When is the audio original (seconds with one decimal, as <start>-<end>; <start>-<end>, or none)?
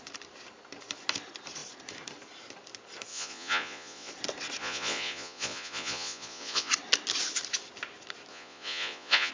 0.0-3.1; 4.1-4.6; 6.7-8.3